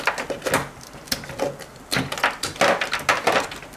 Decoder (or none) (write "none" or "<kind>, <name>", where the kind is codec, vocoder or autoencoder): none